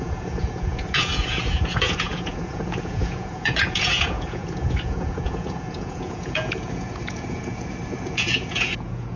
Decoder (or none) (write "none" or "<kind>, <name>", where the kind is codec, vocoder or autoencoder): vocoder, Vocos